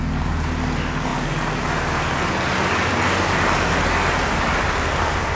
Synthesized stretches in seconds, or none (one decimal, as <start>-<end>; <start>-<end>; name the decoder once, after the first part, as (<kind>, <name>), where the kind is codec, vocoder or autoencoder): none